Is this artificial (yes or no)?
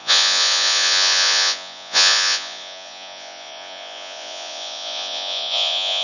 yes